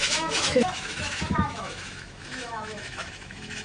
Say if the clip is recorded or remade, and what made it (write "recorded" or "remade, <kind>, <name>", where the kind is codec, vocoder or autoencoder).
remade, autoencoder, DAC-VAE